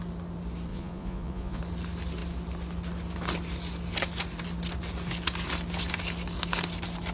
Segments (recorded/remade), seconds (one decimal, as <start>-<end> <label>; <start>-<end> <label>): 0.0-0.7 recorded; 0.7-1.6 remade; 1.6-7.1 recorded